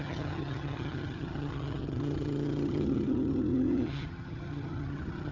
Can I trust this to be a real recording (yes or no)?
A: no